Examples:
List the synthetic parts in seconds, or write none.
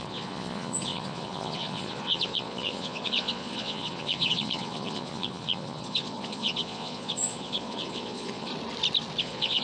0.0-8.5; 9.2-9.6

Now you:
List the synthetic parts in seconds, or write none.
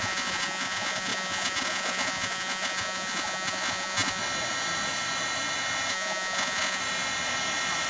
0.0-4.2; 5.9-6.8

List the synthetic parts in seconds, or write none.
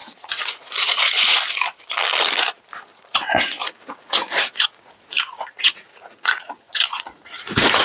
0.0-1.4; 2.9-7.8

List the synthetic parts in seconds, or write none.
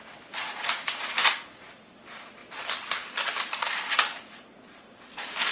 none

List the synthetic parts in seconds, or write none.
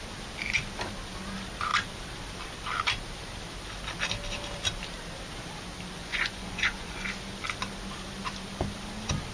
6.0-7.1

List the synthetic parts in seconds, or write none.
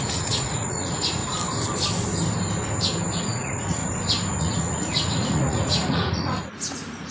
0.0-1.2; 3.2-3.8; 4.4-7.1